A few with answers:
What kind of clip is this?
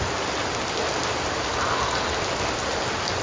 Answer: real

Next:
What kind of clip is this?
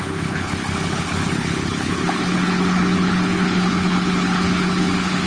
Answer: fake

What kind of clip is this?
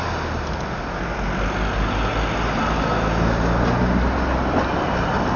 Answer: real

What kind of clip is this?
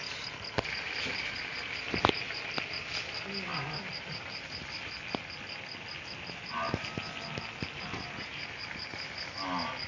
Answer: real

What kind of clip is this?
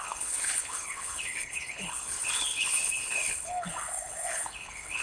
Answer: fake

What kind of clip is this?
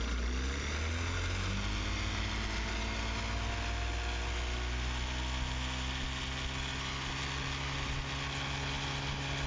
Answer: real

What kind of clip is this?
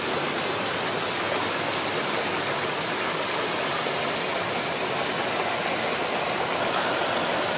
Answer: real